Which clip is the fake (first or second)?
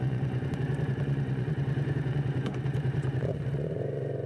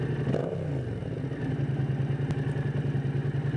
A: first